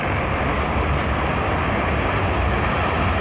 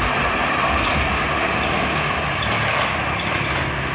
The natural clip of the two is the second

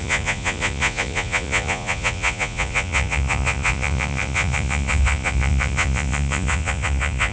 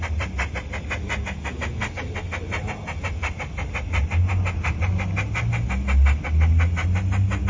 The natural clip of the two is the second